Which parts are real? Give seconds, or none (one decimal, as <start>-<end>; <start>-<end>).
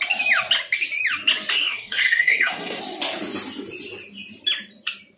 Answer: 0.0-1.5; 2.8-5.2